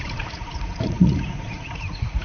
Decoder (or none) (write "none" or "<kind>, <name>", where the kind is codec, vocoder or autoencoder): vocoder, Vocos